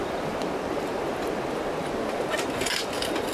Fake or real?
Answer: real